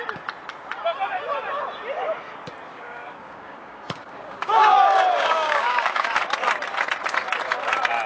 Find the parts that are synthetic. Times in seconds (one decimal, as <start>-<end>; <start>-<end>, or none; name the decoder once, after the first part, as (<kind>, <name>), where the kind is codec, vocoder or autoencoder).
2.7-6.1 (codec, DAC)

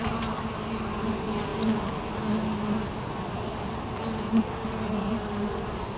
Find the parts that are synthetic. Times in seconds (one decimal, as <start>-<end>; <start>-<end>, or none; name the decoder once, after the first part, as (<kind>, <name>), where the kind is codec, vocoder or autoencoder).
none

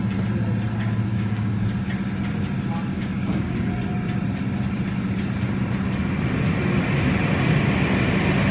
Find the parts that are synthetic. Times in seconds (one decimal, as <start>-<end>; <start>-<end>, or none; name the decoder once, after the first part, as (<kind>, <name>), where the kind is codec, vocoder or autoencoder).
1.1-1.6 (codec, DAC); 2.9-3.7